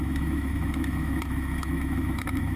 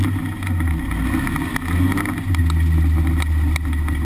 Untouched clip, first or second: second